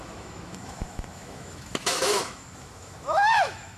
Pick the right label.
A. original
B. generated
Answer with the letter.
B